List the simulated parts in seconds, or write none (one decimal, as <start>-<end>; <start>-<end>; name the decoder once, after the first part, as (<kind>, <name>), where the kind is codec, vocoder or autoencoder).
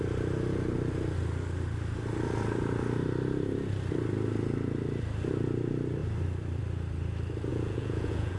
7.5-8.4 (vocoder, Vocos)